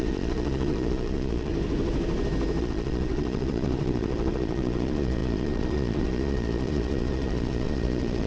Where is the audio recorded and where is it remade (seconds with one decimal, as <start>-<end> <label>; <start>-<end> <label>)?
0.0-1.5 remade; 1.5-2.6 recorded; 2.6-8.3 remade